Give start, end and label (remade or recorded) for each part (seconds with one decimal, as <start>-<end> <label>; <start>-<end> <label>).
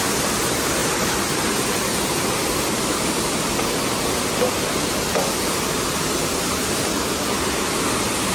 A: 0.0-0.8 recorded; 0.8-3.0 remade; 3.0-8.3 recorded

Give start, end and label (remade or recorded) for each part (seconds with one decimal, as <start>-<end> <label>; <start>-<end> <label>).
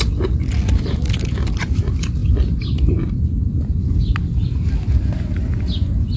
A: 0.0-6.2 recorded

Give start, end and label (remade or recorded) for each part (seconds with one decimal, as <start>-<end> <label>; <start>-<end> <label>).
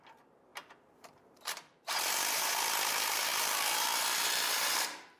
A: 0.0-5.2 remade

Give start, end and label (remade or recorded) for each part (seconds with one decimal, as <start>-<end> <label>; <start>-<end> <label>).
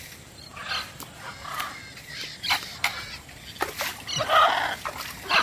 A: 0.0-5.4 recorded